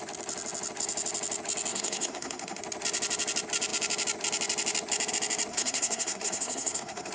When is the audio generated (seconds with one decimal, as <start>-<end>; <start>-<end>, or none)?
1.7-2.6; 5.5-7.1